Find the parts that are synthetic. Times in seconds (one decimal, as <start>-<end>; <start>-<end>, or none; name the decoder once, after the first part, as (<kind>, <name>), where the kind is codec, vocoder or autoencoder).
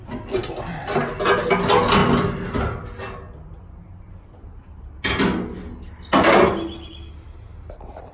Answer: none